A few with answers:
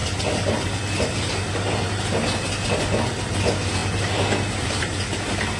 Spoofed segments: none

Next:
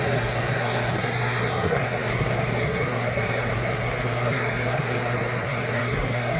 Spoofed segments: 0.0-6.4 (codec, SNAC)